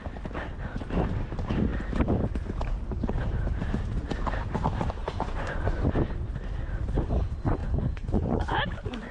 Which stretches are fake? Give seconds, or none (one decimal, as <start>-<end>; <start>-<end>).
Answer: 5.0-6.1; 7.6-8.6